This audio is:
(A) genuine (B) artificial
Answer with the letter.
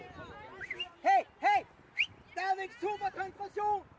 A